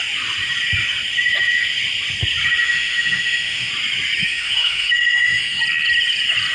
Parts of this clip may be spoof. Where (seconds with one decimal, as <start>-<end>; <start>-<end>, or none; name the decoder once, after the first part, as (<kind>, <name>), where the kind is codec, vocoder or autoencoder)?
2.6-3.7 (autoencoder, DAC-VAE); 4.2-5.6